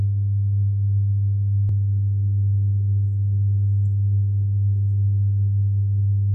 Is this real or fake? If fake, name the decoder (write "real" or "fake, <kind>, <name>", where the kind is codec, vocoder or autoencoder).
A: fake, codec, DAC